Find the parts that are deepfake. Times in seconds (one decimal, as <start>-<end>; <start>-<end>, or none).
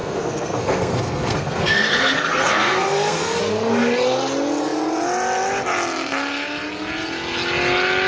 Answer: 0.0-3.4